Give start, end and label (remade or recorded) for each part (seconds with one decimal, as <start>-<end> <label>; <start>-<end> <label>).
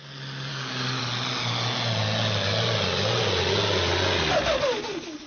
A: 0.0-0.5 recorded; 0.5-1.0 remade; 1.0-5.3 recorded